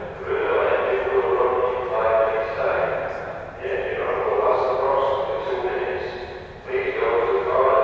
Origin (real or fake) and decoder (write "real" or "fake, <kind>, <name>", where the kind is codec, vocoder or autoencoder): real